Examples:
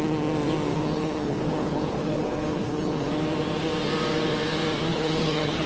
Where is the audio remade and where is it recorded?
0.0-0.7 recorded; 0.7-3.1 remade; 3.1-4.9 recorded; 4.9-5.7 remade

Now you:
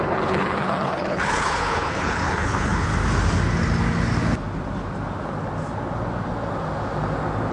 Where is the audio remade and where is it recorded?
0.0-2.9 remade; 2.9-7.5 recorded

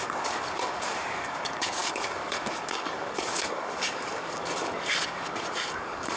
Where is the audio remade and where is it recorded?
0.0-6.2 remade

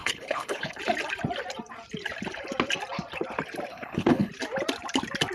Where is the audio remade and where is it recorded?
0.0-0.8 remade; 0.8-3.7 recorded; 3.7-4.3 remade; 4.3-5.3 recorded

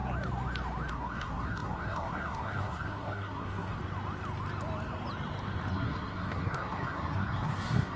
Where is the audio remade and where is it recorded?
0.0-0.9 recorded; 0.9-3.8 remade; 3.8-5.7 recorded; 5.7-8.0 remade

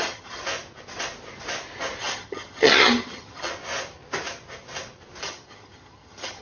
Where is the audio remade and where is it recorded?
0.0-0.4 remade; 0.4-2.0 recorded; 2.0-3.5 remade; 3.5-5.2 recorded; 5.2-6.4 remade

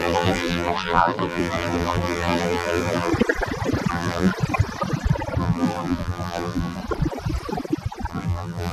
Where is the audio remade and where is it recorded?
0.0-3.1 remade; 3.1-3.9 recorded; 3.9-4.3 remade; 4.3-5.4 recorded; 5.4-6.8 remade; 6.8-8.1 recorded; 8.1-8.7 remade

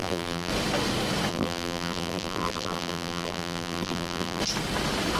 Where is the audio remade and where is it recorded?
0.0-0.5 remade; 0.5-1.3 recorded; 1.3-4.4 remade; 4.4-5.2 recorded